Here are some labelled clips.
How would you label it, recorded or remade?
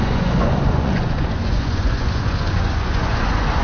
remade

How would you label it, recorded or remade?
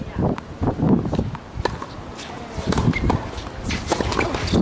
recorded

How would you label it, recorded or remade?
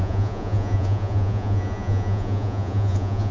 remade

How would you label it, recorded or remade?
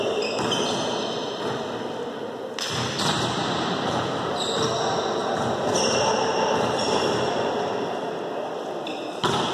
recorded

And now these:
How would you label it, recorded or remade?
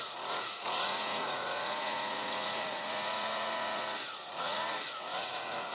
remade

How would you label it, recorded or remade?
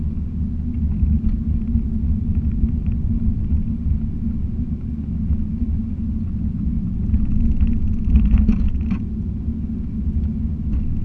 recorded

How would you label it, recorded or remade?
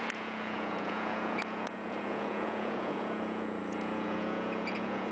remade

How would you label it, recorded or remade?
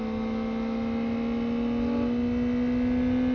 recorded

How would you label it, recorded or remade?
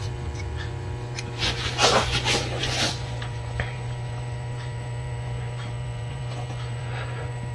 remade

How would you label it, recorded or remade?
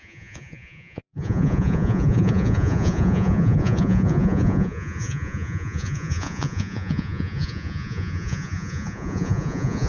remade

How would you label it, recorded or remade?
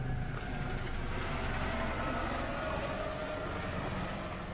recorded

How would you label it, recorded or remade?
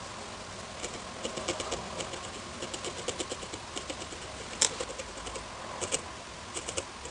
recorded